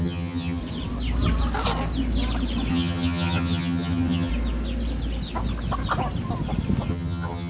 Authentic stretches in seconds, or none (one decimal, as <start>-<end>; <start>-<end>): 0.6-2.7; 4.3-6.9